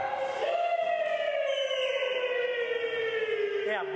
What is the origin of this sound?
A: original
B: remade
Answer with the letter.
A